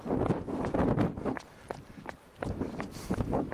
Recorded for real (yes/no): yes